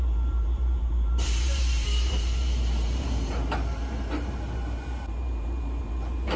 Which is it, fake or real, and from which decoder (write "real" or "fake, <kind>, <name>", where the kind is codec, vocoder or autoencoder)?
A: fake, vocoder, BigVGAN v2